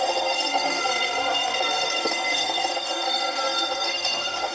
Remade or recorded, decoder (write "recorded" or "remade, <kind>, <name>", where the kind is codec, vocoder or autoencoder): remade, codec, SNAC